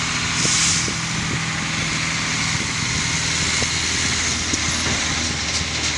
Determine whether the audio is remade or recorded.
recorded